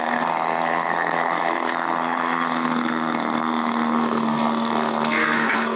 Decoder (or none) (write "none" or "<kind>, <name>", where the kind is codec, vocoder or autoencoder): codec, SNAC